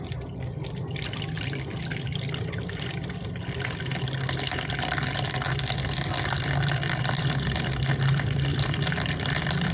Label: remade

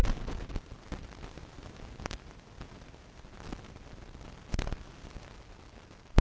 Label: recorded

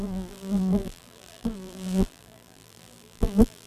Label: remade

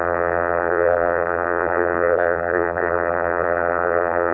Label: remade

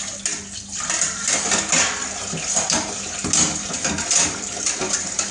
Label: recorded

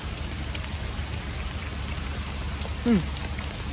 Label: recorded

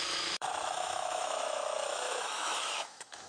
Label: remade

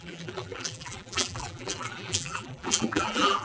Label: remade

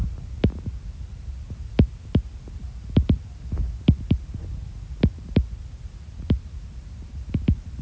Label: recorded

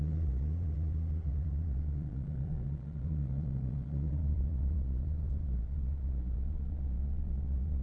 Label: remade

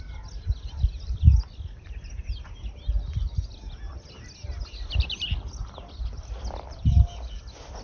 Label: recorded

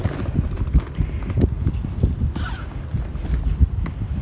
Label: recorded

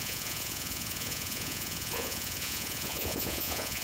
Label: remade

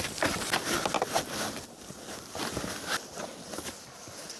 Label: recorded